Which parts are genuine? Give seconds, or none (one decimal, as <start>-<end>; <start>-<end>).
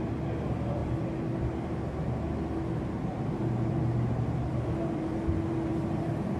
0.8-3.4; 5.7-6.4